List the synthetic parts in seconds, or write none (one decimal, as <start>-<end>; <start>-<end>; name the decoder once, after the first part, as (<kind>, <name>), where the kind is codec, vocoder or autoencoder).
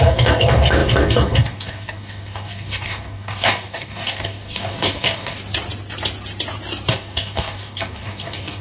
0.0-5.4 (codec, DAC); 6.9-8.6